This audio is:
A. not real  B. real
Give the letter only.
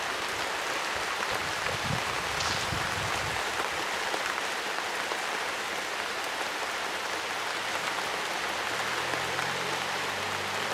B